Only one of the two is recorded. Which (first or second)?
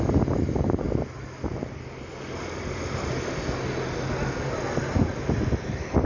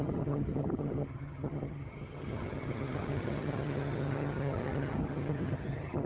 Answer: first